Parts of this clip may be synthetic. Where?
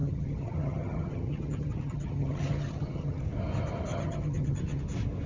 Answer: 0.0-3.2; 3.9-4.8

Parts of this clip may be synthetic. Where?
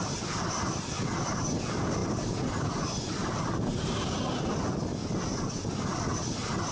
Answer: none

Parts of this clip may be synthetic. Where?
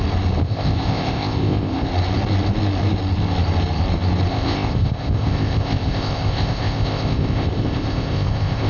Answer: 0.4-1.9; 4.3-8.7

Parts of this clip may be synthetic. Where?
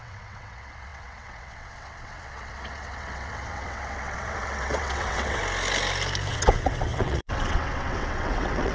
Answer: 0.0-5.4; 6.3-8.7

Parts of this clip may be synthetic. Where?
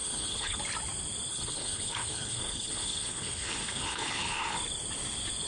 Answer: 0.0-0.6; 1.3-4.6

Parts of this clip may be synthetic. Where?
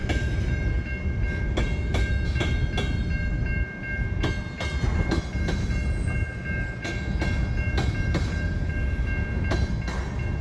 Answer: none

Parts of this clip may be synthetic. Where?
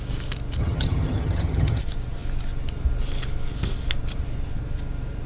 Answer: 0.6-1.8